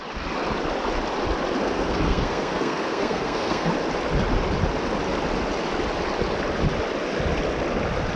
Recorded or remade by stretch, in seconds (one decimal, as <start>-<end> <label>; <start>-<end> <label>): 0.0-1.6 recorded; 1.6-3.7 remade; 3.7-8.2 recorded